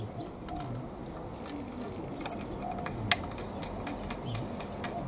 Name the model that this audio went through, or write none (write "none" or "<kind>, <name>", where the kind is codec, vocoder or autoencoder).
none